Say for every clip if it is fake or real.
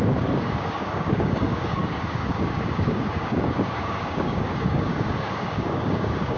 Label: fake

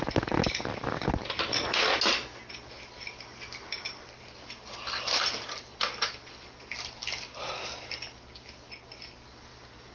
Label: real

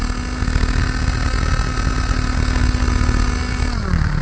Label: real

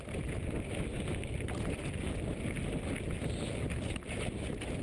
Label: real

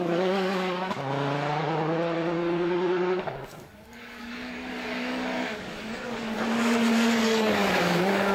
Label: fake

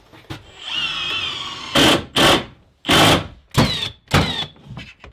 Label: real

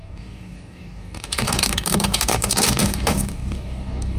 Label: fake